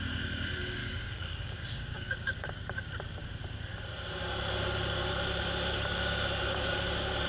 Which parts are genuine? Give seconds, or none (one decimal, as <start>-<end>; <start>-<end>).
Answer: 0.0-0.8; 2.9-7.3